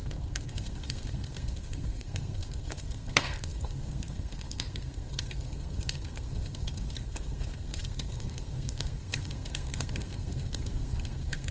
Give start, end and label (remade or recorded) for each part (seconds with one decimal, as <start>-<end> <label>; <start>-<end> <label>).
0.0-11.5 remade